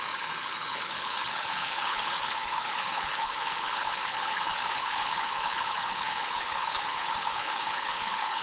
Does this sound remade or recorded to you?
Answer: remade